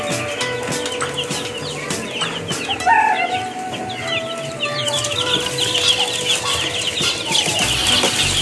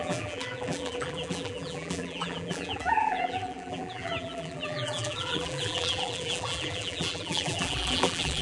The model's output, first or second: second